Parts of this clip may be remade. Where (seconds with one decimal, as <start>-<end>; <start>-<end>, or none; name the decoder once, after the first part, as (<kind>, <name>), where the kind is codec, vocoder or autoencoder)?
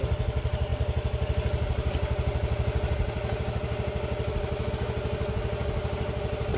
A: none